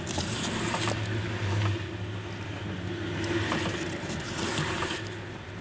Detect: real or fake real